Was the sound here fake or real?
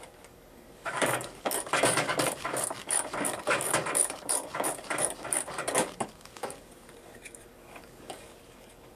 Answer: fake